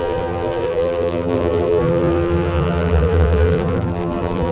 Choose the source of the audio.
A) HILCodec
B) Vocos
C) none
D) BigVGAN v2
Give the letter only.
D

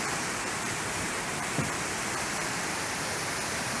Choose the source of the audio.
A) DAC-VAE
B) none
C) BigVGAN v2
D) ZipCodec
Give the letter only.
C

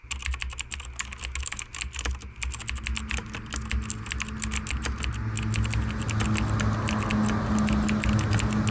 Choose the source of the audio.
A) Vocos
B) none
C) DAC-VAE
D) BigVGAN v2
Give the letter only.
B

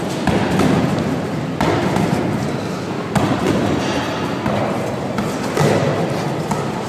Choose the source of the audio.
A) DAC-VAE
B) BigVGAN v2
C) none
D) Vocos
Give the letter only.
C